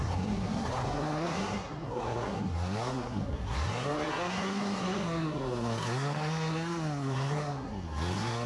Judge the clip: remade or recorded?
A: remade